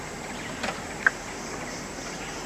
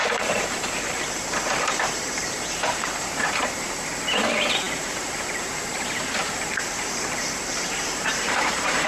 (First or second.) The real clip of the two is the first